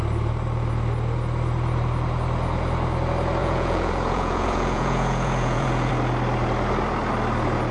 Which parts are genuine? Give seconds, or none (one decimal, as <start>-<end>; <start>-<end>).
0.0-3.4; 5.9-7.7